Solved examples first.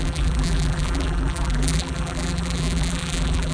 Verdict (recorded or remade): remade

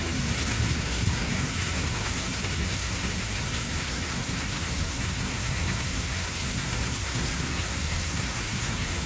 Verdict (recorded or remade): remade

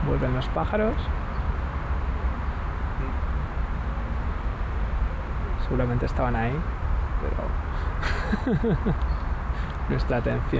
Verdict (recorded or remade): recorded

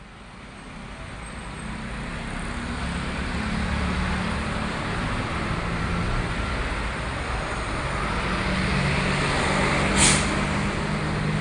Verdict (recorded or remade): recorded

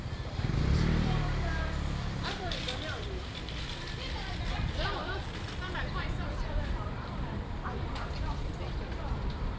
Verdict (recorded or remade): remade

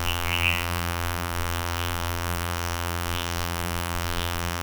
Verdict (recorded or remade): remade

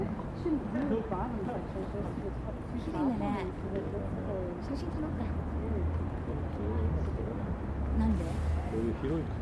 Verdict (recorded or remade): recorded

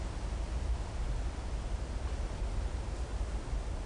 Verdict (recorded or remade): recorded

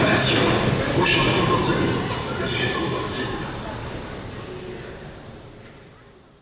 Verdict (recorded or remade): remade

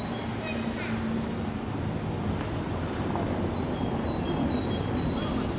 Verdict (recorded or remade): recorded